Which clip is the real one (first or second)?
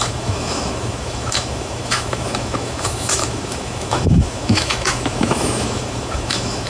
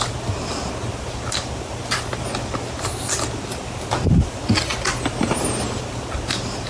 second